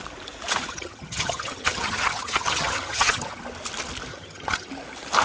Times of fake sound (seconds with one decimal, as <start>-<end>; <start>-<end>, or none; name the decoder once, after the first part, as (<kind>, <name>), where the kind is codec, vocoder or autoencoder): 0.7-3.4 (vocoder, HiFi-GAN); 4.1-4.7